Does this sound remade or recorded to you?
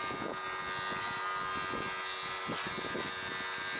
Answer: recorded